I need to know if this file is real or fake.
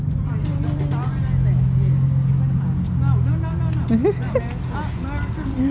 real